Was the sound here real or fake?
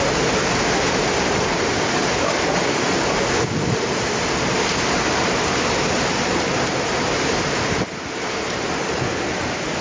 real